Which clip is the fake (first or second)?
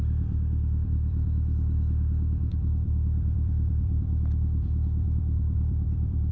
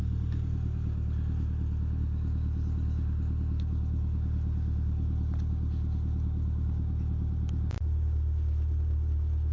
first